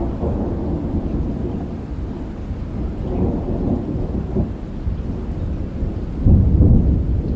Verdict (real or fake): real